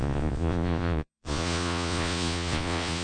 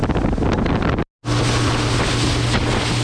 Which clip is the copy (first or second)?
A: first